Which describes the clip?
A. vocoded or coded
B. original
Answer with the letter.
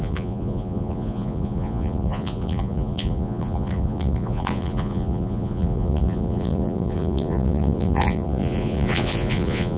A